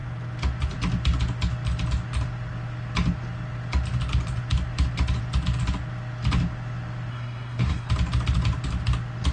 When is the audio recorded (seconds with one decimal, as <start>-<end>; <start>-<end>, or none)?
0.0-7.1; 7.9-9.3

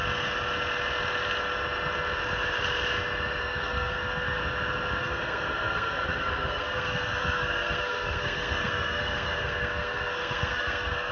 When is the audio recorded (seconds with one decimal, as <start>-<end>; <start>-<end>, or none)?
0.0-3.4; 4.4-5.0

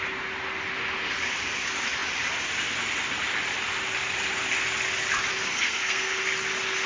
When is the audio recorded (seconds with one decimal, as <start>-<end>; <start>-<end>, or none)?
0.0-5.4; 6.2-6.9

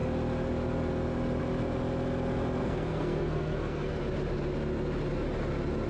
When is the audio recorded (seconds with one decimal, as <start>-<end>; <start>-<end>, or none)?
0.0-2.6; 4.0-5.9

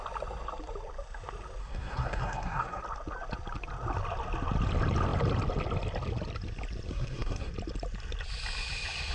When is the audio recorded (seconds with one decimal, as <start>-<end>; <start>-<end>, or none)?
0.0-1.6; 2.8-6.9; 7.5-9.1

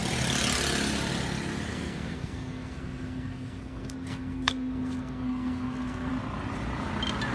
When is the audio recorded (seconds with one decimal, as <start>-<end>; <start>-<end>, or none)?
0.0-1.7; 6.1-7.3